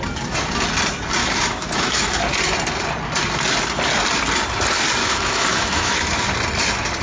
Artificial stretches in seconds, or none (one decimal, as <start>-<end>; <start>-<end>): 1.2-2.2; 5.0-6.2